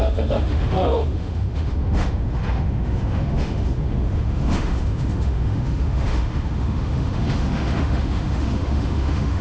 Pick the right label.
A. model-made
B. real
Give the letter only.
A